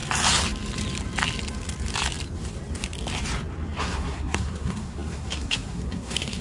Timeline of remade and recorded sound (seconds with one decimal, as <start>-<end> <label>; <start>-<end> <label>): 0.0-3.8 recorded; 3.8-6.4 remade